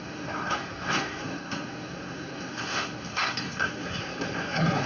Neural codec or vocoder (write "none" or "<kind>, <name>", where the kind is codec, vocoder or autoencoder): codec, SNAC